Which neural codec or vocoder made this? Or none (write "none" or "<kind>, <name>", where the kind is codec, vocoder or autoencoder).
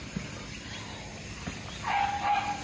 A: none